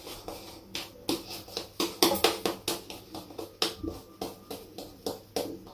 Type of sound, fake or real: real